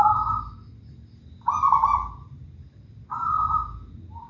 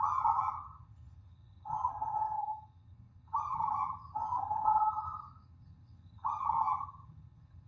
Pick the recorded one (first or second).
first